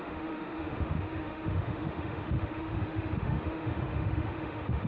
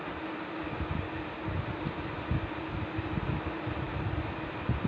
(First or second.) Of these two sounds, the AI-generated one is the first